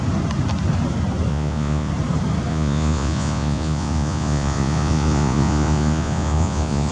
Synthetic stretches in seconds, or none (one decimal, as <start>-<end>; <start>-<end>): 1.3-1.9; 2.5-6.9